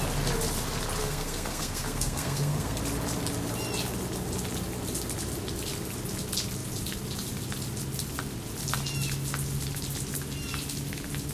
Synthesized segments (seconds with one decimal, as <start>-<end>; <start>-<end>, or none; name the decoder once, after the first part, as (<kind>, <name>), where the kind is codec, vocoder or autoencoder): 1.0-2.8 (codec, SNAC)

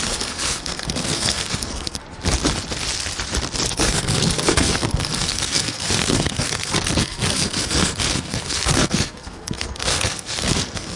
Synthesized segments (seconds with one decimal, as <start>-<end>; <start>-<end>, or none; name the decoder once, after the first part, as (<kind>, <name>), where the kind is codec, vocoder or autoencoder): 0.0-2.0 (codec, SNAC); 3.7-11.0

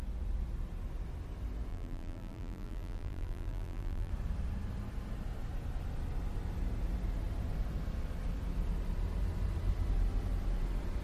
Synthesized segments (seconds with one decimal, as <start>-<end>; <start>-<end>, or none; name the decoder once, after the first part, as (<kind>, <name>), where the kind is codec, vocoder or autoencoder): 1.7-4.1 (vocoder, BigVGAN v2)

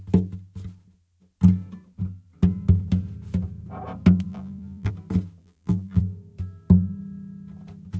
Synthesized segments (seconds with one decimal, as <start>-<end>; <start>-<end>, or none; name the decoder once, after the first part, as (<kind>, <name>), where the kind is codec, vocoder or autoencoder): 4.3-4.9 (vocoder, BigVGAN v2); 5.4-6.0

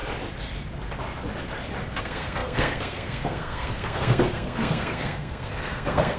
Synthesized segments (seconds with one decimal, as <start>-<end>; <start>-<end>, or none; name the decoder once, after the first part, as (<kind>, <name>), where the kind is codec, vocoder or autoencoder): 2.0-6.2 (codec, SNAC)

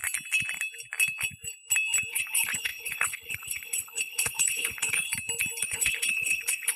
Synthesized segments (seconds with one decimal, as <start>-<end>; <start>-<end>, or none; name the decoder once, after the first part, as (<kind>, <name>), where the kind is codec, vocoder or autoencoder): 2.1-5.1 (codec, HILCodec); 5.6-6.8

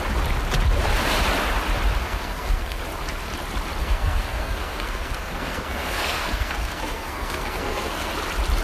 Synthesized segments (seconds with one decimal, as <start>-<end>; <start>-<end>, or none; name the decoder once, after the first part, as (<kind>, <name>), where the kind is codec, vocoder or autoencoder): 2.0-2.8 (codec, SNAC); 3.8-8.1

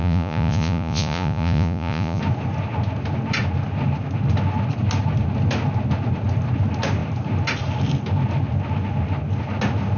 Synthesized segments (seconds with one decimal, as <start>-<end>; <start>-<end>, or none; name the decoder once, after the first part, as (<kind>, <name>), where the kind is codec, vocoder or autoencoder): 0.0-2.2 (vocoder, Vocos)